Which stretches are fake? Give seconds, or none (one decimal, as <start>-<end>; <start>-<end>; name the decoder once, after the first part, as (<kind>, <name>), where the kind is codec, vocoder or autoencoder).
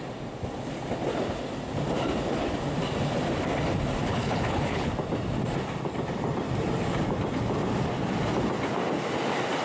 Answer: 4.1-4.9 (codec, HILCodec)